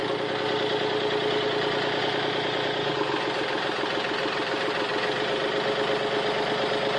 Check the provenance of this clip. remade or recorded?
recorded